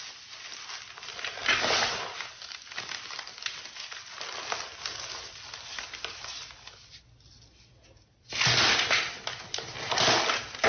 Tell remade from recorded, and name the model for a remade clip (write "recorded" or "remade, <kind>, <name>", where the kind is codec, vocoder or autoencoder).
recorded